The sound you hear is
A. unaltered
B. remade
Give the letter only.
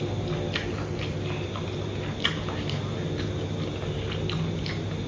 A